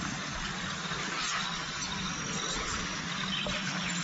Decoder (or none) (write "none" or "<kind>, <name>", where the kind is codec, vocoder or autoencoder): none